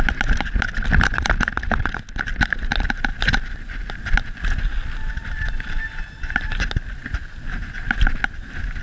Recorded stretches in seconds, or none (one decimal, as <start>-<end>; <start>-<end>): 0.0-8.8